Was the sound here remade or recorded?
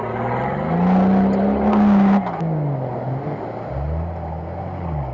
recorded